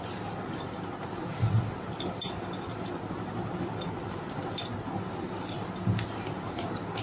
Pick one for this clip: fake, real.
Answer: real